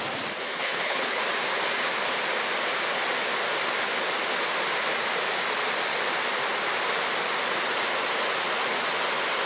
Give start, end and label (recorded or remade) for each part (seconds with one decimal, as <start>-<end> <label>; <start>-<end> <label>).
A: 0.0-0.4 recorded; 0.4-1.2 remade; 1.2-9.5 recorded